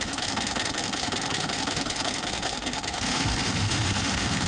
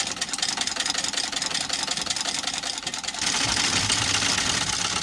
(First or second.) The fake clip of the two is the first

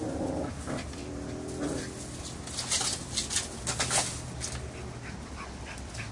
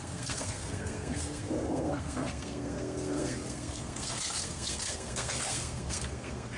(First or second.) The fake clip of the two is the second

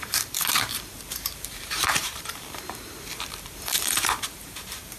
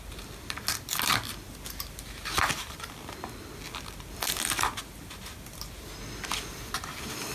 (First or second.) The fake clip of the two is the first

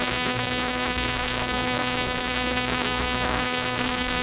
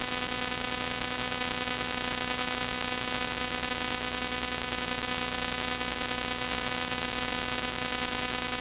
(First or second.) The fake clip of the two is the first